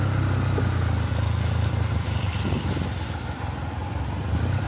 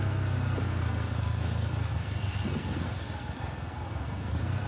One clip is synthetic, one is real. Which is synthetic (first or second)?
second